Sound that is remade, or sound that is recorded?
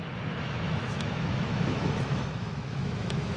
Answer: remade